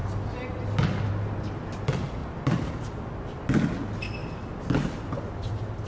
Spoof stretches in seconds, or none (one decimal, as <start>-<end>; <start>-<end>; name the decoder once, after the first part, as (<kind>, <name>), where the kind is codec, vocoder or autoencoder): 2.2-3.0 (vocoder, BigVGAN v2); 4.2-5.0